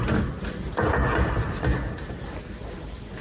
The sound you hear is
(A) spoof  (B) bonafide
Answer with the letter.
B